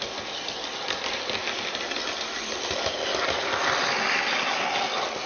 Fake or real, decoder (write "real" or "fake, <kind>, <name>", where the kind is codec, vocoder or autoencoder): real